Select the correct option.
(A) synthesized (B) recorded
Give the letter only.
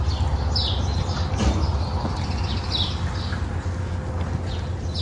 B